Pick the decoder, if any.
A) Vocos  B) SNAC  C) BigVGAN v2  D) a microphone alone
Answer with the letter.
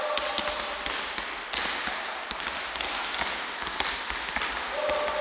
D